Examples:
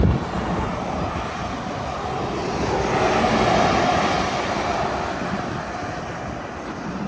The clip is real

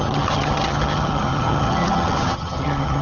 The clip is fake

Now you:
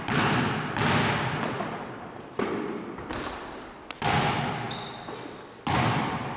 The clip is real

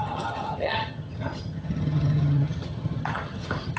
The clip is fake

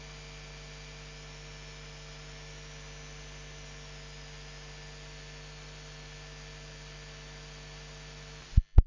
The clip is real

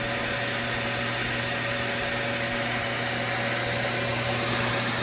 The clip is real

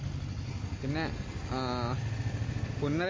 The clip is real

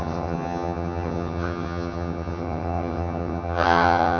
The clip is fake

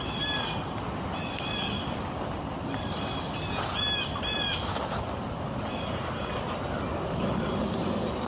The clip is real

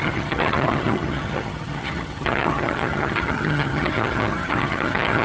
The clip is fake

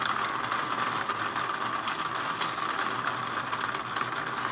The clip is real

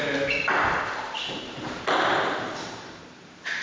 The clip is real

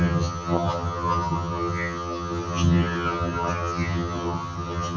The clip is fake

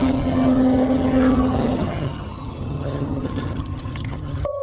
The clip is fake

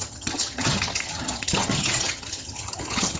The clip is fake